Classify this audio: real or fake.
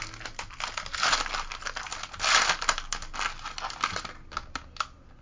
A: real